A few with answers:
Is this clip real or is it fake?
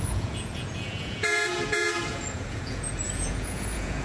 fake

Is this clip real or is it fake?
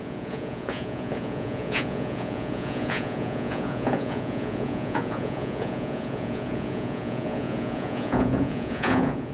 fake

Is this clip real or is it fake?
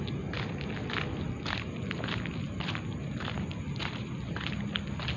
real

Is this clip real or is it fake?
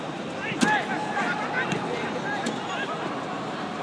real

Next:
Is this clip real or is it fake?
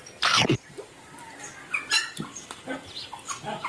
real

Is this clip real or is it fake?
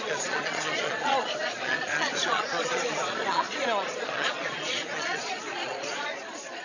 fake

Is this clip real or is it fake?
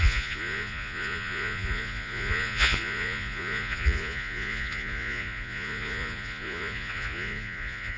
fake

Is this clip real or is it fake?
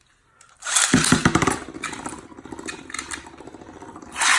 real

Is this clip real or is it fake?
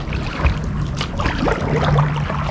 real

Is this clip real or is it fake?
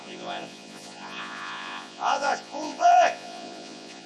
fake